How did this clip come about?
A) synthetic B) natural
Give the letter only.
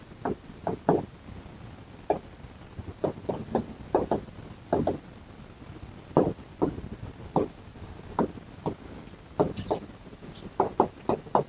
B